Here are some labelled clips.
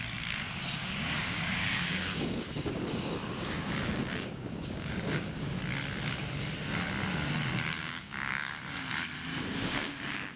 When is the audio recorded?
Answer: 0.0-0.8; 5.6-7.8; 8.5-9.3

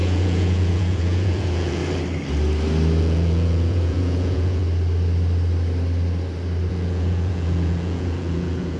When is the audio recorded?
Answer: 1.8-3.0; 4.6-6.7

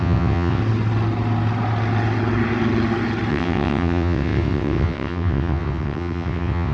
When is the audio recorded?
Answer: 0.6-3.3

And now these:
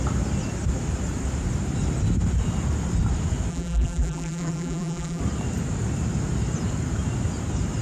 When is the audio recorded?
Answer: 0.0-3.5; 5.2-7.8

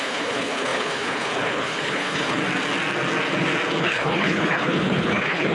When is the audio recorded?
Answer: 2.4-3.8

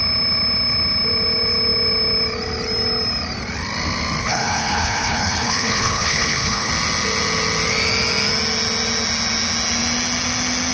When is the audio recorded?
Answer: 0.0-4.2; 6.7-10.7

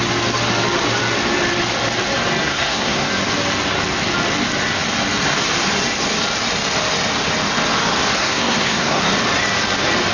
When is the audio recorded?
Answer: 0.0-2.4; 3.1-8.2; 9.0-10.1